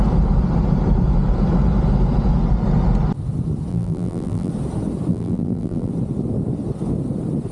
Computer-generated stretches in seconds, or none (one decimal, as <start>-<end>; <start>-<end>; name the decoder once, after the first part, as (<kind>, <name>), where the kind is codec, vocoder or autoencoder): 3.7-4.5 (vocoder, BigVGAN v2); 5.1-5.9